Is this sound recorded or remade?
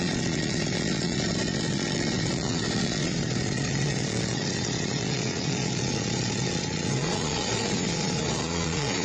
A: remade